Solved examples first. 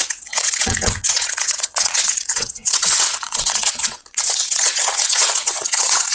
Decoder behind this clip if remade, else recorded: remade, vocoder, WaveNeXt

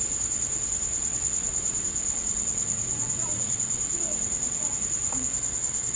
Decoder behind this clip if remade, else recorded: remade, vocoder, WaveNeXt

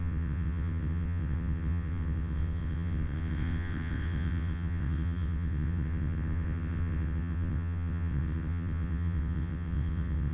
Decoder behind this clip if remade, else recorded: remade, vocoder, WaveNeXt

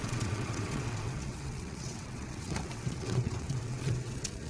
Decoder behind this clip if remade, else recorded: remade, vocoder, WaveNeXt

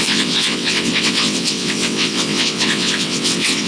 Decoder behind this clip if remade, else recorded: remade, vocoder, WaveNeXt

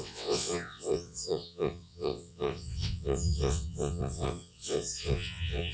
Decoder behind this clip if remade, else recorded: remade, vocoder, WaveNeXt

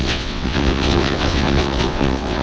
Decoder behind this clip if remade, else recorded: remade, vocoder, WaveNeXt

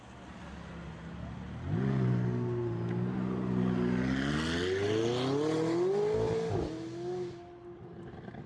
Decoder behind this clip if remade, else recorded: recorded